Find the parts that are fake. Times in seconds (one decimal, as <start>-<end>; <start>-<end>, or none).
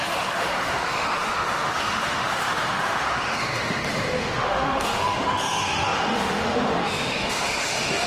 0.0-8.1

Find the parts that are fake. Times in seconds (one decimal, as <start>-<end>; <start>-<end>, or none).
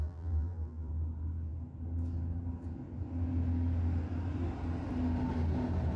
0.0-0.9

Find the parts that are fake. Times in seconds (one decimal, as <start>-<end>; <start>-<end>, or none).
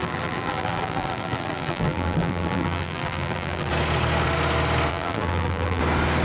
0.0-3.7; 4.9-5.8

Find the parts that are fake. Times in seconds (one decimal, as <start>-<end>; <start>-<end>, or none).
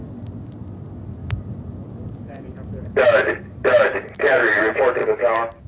1.2-4.6; 5.0-5.7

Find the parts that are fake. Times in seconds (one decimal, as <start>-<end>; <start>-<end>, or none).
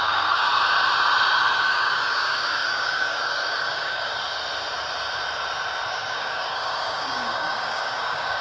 0.0-0.5; 1.5-4.1; 5.9-8.4